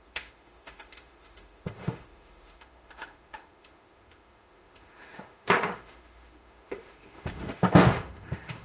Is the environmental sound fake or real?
fake